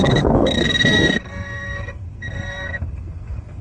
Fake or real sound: fake